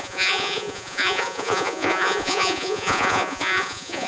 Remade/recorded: remade